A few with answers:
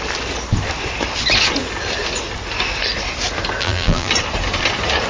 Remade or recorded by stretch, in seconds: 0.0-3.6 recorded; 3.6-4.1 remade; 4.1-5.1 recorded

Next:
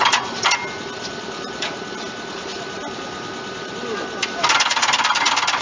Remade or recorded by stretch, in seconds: 0.0-5.6 recorded

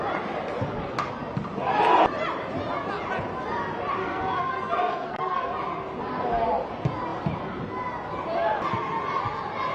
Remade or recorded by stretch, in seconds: 0.0-4.0 recorded; 4.0-5.5 remade; 5.5-9.7 recorded

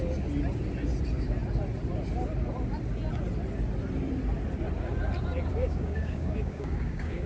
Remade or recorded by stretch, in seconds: 0.0-5.5 recorded; 5.5-7.3 remade

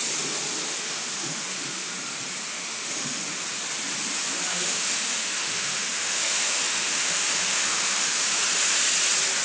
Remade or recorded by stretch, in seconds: 0.0-0.7 recorded; 0.7-1.9 remade; 1.9-2.5 recorded; 2.5-3.2 remade; 3.2-4.5 recorded; 4.5-8.4 remade; 8.4-9.4 recorded